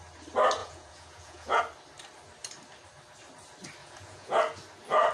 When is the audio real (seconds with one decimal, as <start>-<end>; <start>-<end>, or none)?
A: 0.0-0.6; 1.6-3.8; 4.4-5.1